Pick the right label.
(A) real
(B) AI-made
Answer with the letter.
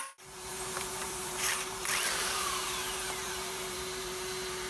B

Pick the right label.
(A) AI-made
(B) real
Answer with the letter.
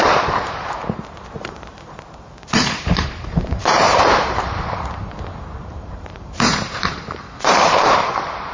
A